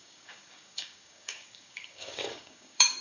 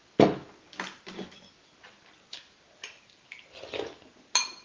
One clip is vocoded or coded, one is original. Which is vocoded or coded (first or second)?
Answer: first